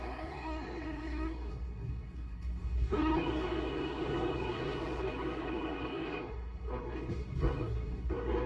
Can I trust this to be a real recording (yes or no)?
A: no